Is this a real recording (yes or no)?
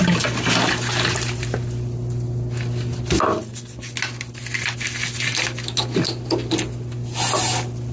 yes